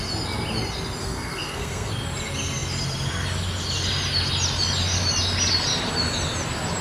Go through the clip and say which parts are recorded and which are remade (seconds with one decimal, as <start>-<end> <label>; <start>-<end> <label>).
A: 0.0-1.0 recorded; 1.0-1.9 remade; 1.9-6.8 recorded